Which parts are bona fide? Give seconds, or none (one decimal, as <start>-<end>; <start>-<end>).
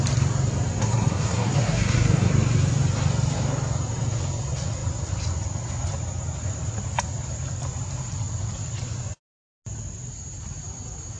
0.0-0.8; 2.3-11.2